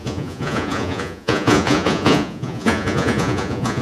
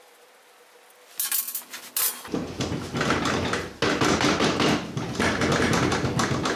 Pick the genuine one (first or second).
second